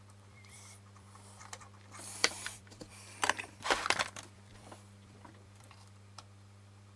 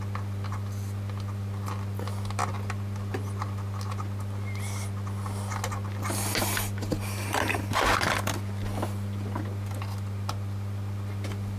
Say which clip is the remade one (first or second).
first